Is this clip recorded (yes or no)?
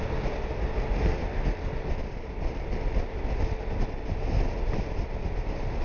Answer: yes